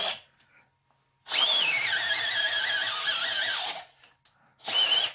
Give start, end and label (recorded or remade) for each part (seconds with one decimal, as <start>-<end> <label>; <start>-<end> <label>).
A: 0.0-5.1 recorded